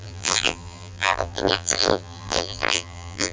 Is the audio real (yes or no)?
no